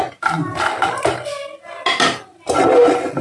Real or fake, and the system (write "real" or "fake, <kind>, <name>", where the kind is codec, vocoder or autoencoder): real